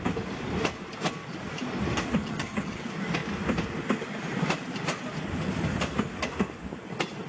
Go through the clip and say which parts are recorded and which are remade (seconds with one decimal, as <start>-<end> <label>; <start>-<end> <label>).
0.0-2.2 recorded; 2.2-2.8 remade; 2.8-7.3 recorded